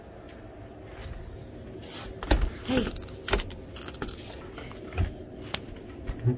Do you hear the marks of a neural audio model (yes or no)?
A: no